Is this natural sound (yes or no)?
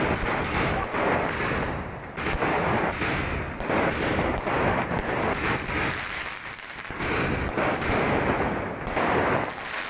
yes